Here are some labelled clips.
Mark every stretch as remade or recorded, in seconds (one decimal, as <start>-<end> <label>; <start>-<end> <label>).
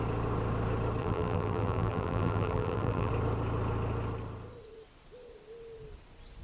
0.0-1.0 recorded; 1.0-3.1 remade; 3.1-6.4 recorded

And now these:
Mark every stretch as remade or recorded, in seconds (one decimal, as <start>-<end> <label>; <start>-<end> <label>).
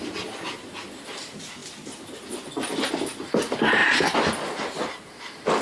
0.0-1.6 remade; 1.6-2.9 recorded; 2.9-3.8 remade; 3.8-4.8 recorded; 4.8-5.6 remade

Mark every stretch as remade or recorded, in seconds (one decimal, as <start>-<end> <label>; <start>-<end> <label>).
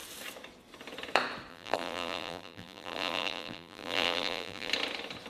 0.0-1.5 recorded; 1.5-4.7 remade; 4.7-5.3 recorded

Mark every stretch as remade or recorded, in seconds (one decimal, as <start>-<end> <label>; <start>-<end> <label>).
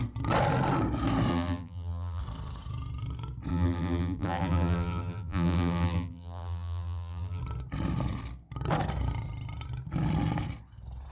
0.0-1.3 recorded; 1.3-2.2 remade; 2.2-3.5 recorded; 3.5-7.4 remade; 7.4-11.1 recorded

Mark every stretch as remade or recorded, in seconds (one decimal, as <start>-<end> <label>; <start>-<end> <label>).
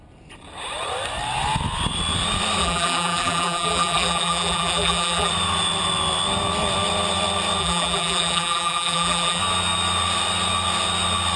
0.0-2.6 recorded; 2.6-5.3 remade; 5.3-7.6 recorded; 7.6-9.4 remade; 9.4-11.4 recorded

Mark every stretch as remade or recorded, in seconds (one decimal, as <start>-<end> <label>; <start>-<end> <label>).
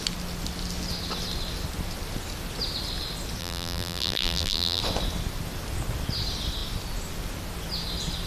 0.0-3.4 recorded; 3.4-4.8 remade; 4.8-8.3 recorded